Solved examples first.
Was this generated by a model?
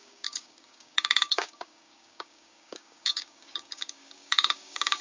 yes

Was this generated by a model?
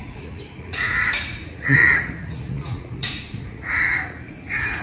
yes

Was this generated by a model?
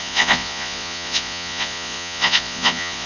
yes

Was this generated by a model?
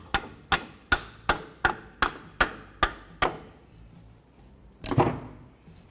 no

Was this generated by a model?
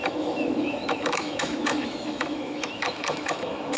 yes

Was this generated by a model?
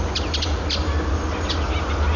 no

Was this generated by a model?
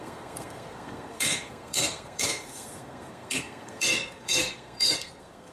yes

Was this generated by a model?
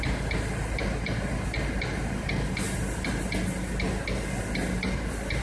no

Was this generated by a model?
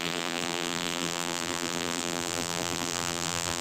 yes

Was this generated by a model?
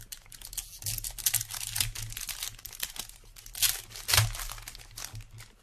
no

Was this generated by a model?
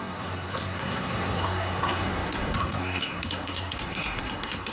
yes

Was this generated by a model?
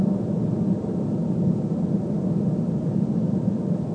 no